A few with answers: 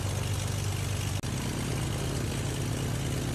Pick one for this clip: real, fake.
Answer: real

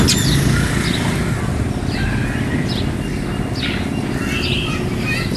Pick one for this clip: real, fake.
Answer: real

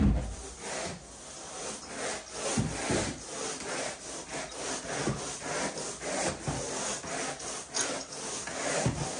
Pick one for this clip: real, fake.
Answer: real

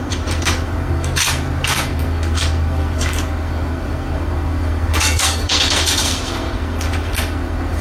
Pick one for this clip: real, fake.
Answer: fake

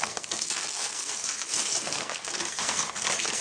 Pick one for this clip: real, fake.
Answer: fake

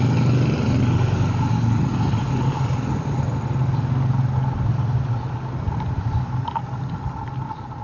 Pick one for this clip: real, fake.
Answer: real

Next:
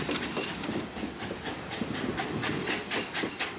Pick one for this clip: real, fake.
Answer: real